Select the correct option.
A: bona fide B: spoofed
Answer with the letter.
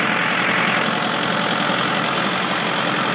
A